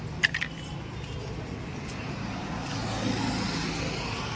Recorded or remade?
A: recorded